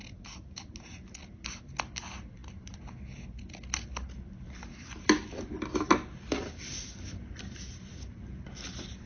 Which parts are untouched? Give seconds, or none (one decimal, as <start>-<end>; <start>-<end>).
0.0-9.1

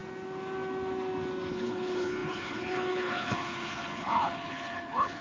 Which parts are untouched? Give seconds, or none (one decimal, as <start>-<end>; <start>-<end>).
0.0-1.5